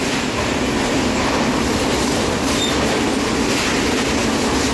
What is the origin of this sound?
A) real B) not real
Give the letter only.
A